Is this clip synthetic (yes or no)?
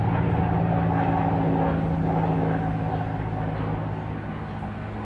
no